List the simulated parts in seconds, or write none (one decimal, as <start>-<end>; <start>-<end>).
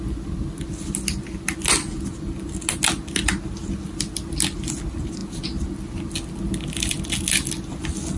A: none